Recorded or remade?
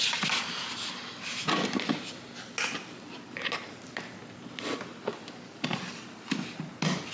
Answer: recorded